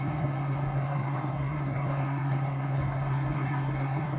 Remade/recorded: remade